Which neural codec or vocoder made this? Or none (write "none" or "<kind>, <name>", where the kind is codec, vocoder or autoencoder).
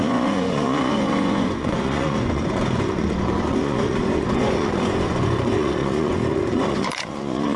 vocoder, Vocos